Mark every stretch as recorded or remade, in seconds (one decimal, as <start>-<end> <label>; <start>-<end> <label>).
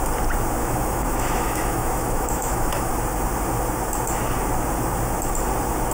0.0-0.6 recorded; 0.6-2.9 remade; 2.9-5.9 recorded